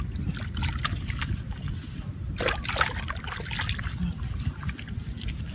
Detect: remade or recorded recorded